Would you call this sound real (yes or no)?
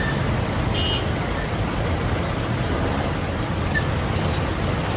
yes